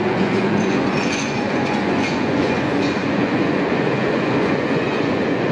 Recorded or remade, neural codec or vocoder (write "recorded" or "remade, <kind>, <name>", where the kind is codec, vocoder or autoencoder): remade, vocoder, Vocos